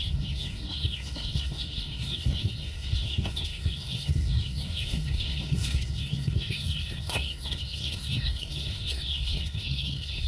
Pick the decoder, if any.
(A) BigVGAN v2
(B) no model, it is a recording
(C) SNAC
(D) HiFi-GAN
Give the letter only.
C